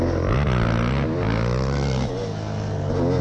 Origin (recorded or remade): recorded